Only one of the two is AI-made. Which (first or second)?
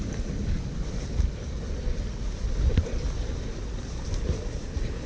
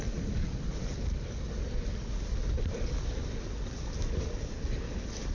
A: first